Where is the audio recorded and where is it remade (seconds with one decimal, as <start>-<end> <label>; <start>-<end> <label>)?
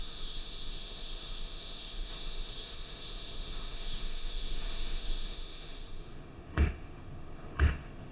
0.0-8.1 remade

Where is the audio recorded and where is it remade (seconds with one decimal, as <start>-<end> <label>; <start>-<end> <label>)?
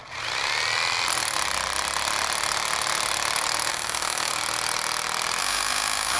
0.0-3.7 recorded; 3.7-4.3 remade; 4.3-5.4 recorded; 5.4-6.2 remade